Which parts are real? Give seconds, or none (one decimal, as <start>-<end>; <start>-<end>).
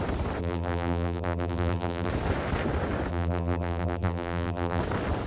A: 0.0-0.4; 2.1-3.1; 4.8-5.3